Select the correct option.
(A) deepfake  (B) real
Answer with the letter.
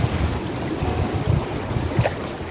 B